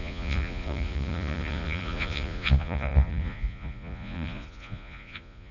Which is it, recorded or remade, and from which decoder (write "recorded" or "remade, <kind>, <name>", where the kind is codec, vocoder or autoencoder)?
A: remade, vocoder, Vocos